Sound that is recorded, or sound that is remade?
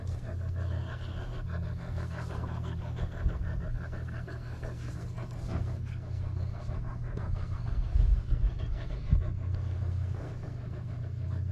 remade